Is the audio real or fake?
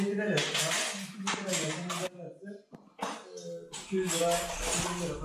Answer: real